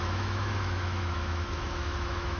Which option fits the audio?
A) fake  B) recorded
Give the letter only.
A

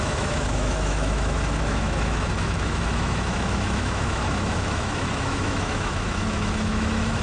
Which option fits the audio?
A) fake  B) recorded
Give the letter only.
A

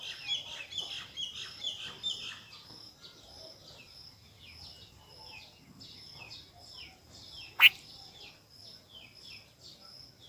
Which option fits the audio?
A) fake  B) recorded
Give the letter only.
B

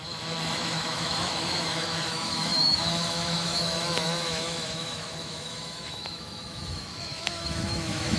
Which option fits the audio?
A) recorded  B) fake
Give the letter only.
B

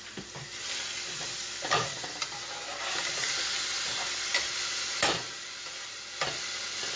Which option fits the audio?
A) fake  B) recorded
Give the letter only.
B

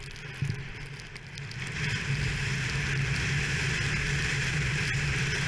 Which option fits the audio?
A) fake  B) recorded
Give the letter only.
B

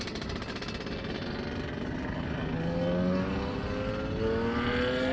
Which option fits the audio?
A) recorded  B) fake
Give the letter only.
A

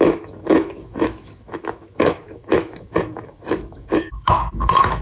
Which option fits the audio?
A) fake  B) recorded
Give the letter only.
A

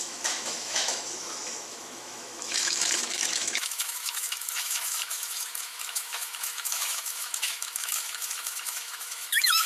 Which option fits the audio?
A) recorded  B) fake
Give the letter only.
B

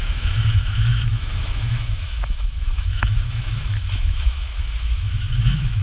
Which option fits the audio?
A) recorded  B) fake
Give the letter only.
B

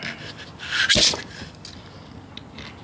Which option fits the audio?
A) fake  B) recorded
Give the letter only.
B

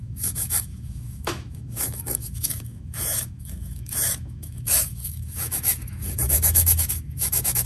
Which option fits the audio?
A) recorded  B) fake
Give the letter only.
B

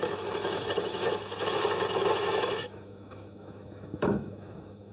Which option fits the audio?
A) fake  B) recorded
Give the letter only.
A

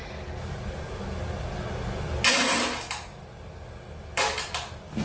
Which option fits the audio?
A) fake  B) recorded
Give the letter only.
B